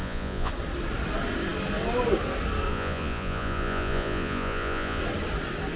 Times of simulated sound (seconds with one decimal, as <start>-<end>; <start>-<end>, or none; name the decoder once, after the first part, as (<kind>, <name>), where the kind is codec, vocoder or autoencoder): 0.0-0.5 (vocoder, Vocos); 2.7-5.0